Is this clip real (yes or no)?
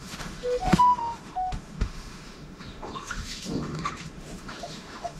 no